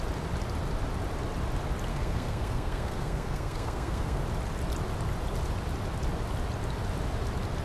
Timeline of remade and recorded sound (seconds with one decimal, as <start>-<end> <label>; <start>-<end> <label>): 0.0-1.9 recorded; 1.9-4.2 remade; 4.2-7.6 recorded